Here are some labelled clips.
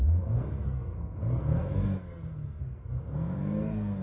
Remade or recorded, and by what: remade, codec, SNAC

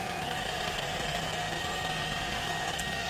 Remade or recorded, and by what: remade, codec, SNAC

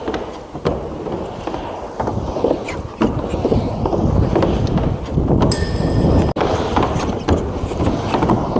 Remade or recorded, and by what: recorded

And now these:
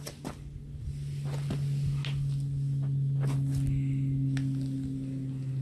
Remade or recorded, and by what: recorded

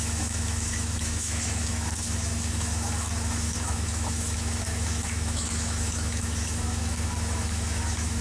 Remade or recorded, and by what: remade, autoencoder, DAC-VAE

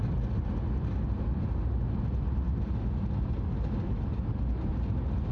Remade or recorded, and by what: recorded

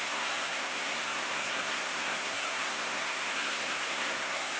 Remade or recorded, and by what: remade, codec, SNAC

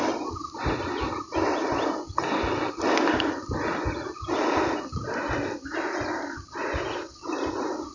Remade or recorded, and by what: recorded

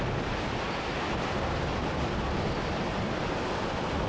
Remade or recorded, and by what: recorded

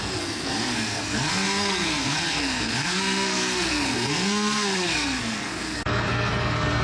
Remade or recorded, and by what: remade, codec, SNAC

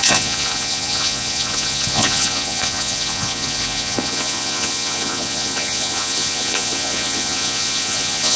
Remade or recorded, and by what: remade, vocoder, Vocos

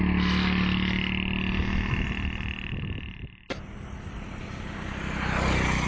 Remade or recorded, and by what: recorded